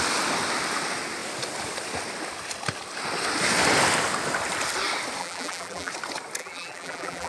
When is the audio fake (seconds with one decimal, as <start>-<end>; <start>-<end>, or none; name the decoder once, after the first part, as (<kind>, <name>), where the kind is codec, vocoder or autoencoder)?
5.2-5.9 (vocoder, BigVGAN v2); 6.4-7.3